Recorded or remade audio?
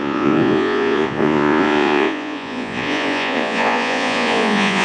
remade